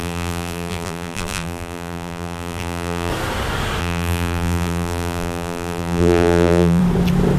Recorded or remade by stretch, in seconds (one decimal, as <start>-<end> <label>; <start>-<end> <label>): 0.0-3.1 remade; 3.1-3.8 recorded; 3.8-6.8 remade; 6.8-7.4 recorded

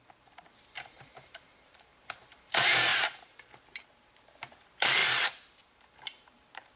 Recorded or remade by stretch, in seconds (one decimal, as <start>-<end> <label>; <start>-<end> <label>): 0.0-5.0 remade; 5.0-5.7 recorded; 5.7-6.8 remade

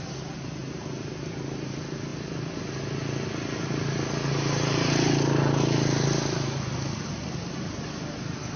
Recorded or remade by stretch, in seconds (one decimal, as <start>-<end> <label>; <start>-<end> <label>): 0.0-8.6 recorded

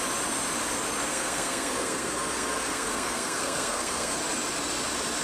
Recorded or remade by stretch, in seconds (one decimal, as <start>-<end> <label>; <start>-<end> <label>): 0.0-1.1 recorded; 1.1-4.2 remade; 4.2-5.2 recorded

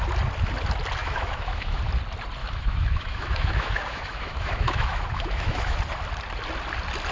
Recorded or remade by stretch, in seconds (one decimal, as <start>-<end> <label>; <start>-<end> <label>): 0.0-1.0 recorded; 1.0-1.8 remade; 1.8-2.4 recorded; 2.4-5.8 remade; 5.8-7.1 recorded

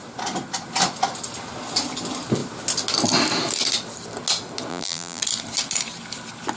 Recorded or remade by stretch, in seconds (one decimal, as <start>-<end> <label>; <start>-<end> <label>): 0.0-4.7 recorded; 4.7-5.2 remade; 5.2-6.6 recorded

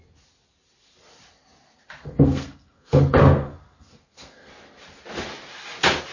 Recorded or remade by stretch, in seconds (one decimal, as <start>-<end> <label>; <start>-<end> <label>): 0.0-2.0 recorded; 2.0-4.5 remade; 4.5-6.1 recorded